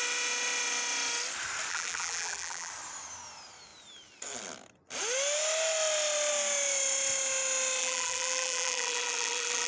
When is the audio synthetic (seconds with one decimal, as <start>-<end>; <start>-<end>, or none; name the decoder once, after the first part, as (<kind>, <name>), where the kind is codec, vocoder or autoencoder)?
1.7-2.7 (vocoder, BigVGAN v2); 7.8-9.7